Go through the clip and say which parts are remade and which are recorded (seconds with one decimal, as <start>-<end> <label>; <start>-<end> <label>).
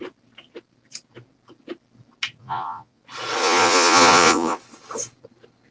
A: 0.0-2.4 recorded; 2.4-3.0 remade; 3.0-3.4 recorded; 3.4-4.6 remade; 4.6-5.7 recorded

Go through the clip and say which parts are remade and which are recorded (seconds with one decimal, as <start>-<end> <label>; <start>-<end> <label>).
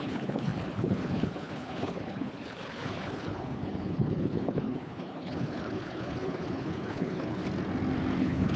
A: 0.0-7.4 remade; 7.4-8.2 recorded; 8.2-8.6 remade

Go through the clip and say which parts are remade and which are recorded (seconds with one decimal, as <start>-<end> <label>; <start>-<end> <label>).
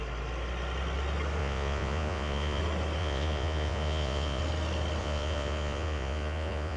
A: 0.0-1.4 recorded; 1.4-2.6 remade; 2.6-3.0 recorded; 3.0-4.4 remade; 4.4-5.0 recorded; 5.0-6.8 remade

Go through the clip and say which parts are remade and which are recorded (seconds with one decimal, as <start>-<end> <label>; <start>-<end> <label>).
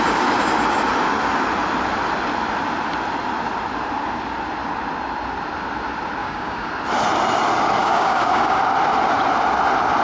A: 0.0-6.2 recorded; 6.2-6.7 remade; 6.7-7.8 recorded; 7.8-8.6 remade; 8.6-10.0 recorded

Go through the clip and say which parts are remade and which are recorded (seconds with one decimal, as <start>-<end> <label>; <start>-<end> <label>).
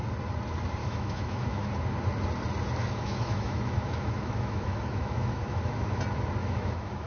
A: 0.0-0.8 recorded; 0.8-1.7 remade; 1.7-2.8 recorded; 2.8-6.0 remade; 6.0-6.4 recorded; 6.4-7.1 remade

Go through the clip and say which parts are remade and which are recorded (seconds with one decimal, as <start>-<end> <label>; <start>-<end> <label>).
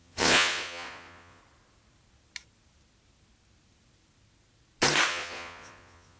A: 0.0-1.4 remade; 1.4-5.1 recorded; 5.1-6.2 remade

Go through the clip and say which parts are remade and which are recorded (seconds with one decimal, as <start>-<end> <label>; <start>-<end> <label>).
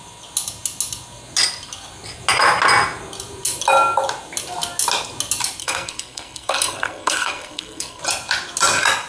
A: 0.0-5.6 recorded; 5.6-8.0 remade; 8.0-9.1 recorded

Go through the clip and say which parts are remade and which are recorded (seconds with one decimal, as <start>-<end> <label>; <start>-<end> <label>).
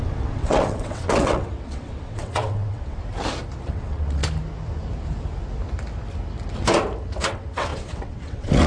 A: 0.0-3.0 remade; 3.0-3.6 recorded; 3.6-4.2 remade; 4.2-7.2 recorded; 7.2-8.7 remade